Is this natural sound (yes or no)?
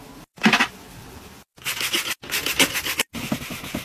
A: yes